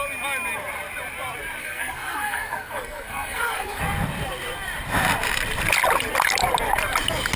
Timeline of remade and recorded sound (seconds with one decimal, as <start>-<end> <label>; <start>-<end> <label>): 0.0-1.6 recorded; 1.6-3.8 remade; 3.8-7.4 recorded